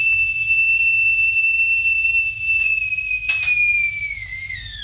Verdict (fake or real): real